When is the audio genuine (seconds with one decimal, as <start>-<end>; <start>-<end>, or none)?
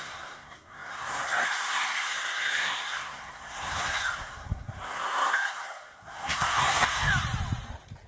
7.1-8.1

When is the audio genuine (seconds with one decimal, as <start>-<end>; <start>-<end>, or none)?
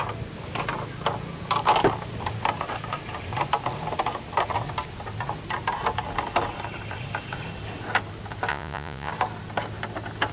0.0-8.5; 9.1-10.3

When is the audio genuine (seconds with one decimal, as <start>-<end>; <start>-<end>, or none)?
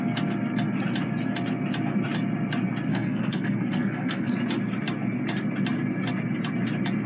0.0-2.9; 4.3-7.1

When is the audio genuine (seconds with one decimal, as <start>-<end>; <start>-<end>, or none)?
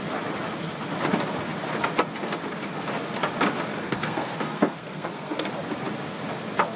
0.0-3.8; 5.5-6.8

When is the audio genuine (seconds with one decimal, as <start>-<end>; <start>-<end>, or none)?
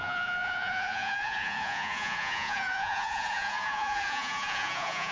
none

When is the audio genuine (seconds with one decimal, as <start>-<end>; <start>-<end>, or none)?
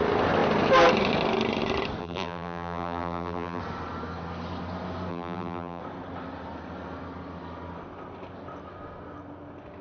0.0-2.0; 3.6-5.1; 5.8-9.8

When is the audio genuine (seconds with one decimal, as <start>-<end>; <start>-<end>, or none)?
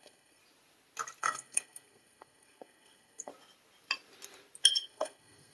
0.4-1.2; 3.3-4.7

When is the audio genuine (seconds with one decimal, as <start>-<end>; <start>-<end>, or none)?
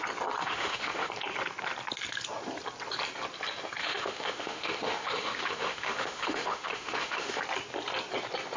0.0-0.4; 1.1-3.8; 7.4-8.6